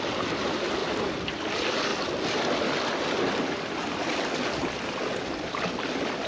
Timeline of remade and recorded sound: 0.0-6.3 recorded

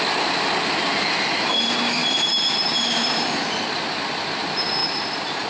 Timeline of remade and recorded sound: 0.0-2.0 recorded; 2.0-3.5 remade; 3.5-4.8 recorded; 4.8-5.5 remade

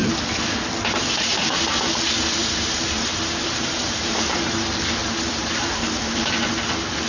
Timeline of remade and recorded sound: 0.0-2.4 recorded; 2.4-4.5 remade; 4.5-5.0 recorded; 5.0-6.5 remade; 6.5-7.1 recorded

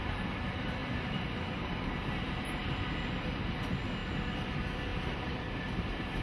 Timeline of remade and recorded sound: 0.0-0.8 recorded; 0.8-2.7 remade; 2.7-4.9 recorded; 4.9-6.2 remade

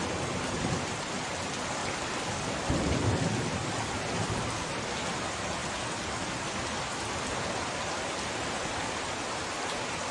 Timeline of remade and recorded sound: 0.0-1.8 recorded; 1.8-2.7 remade; 2.7-10.1 recorded

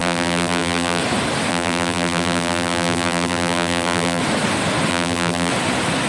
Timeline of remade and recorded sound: 0.0-1.0 remade; 1.0-1.5 recorded; 1.5-4.2 remade; 4.2-4.9 recorded; 4.9-5.5 remade; 5.5-6.1 recorded